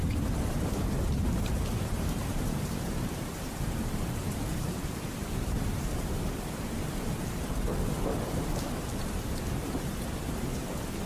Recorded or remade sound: remade